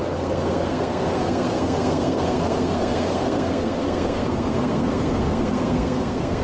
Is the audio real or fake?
fake